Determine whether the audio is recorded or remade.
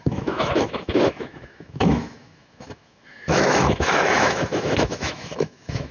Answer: remade